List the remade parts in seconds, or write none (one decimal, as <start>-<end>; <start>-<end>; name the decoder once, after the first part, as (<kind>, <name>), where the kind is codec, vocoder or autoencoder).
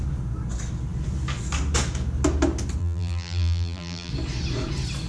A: 2.8-4.1 (vocoder, BigVGAN v2)